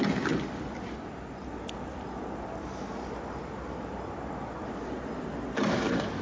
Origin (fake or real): real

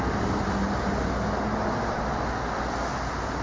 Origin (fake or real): real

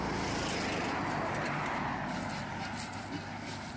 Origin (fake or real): real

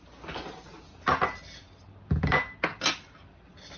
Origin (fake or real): real